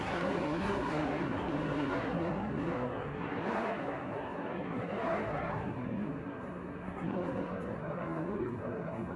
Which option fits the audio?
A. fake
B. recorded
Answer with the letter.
A